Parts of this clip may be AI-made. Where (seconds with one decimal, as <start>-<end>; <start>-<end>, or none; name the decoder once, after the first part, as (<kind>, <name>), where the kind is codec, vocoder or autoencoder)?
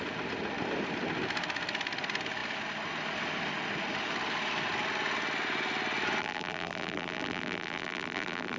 6.2-8.6 (vocoder, BigVGAN v2)